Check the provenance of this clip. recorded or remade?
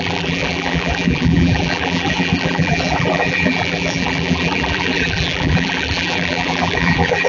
remade